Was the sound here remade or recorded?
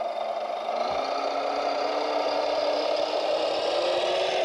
recorded